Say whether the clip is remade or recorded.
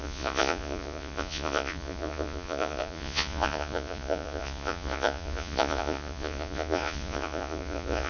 remade